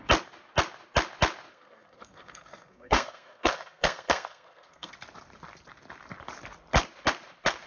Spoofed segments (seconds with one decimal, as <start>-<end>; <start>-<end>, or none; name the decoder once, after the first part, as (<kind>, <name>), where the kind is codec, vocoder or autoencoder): 1.5-4.9 (codec, SNAC)